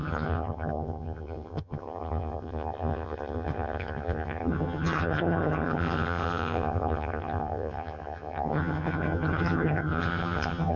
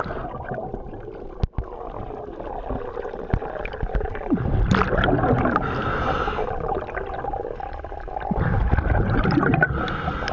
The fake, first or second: first